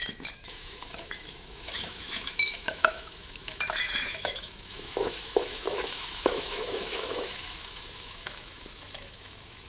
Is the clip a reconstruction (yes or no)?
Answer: yes